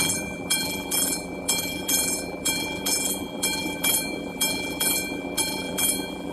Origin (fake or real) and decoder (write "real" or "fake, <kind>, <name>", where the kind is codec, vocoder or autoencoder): fake, vocoder, BigVGAN v2